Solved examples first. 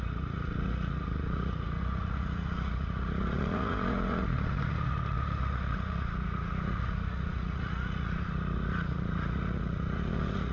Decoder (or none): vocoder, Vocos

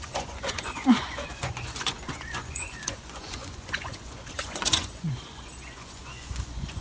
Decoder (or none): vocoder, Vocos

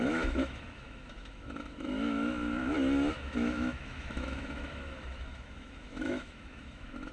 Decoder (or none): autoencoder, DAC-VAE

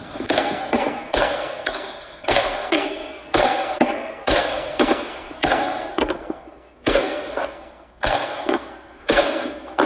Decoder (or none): codec, SNAC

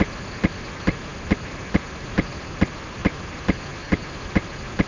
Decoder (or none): none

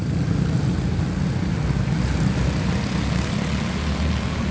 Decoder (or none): none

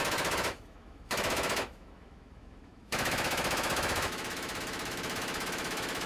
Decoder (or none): autoencoder, DAC-VAE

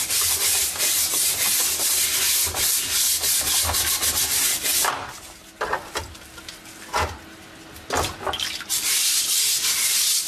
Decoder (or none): none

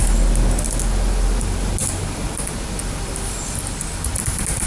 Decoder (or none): none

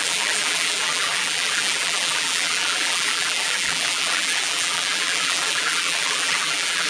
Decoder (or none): vocoder, BigVGAN v2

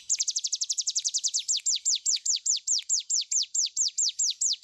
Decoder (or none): vocoder, Vocos